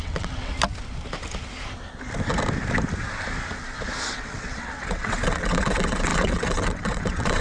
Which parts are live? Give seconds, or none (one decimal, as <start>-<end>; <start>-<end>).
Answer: 0.5-4.1